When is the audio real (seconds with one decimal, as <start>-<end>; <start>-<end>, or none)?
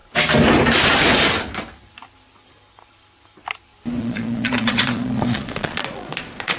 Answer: 0.0-4.0